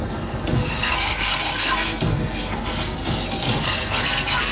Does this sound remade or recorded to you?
remade